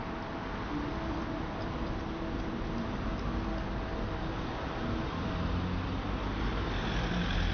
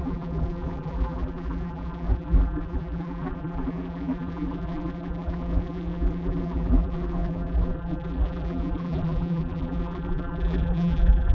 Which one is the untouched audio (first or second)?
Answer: first